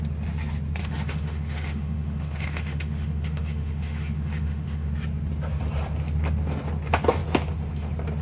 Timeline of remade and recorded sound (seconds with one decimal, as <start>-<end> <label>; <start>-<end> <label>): 0.0-0.8 recorded; 0.8-4.9 remade; 4.9-8.2 recorded